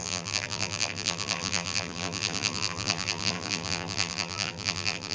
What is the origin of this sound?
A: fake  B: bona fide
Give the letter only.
A